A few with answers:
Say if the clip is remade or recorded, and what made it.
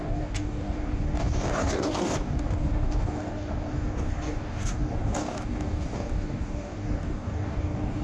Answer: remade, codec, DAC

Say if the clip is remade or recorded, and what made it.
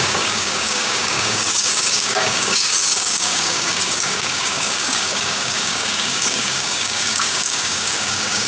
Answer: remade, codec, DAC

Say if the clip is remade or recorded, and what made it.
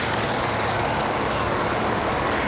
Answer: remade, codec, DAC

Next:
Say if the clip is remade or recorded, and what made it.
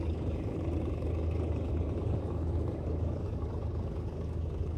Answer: remade, codec, DAC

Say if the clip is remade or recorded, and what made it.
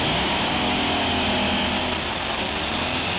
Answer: recorded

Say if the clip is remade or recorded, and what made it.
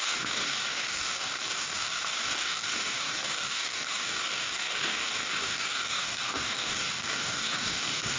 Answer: remade, codec, DAC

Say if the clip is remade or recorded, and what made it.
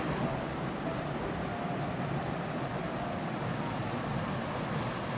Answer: recorded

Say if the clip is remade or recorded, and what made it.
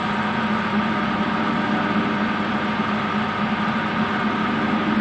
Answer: recorded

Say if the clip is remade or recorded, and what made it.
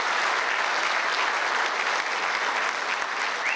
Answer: recorded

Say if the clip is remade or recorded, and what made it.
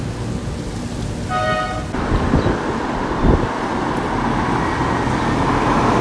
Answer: recorded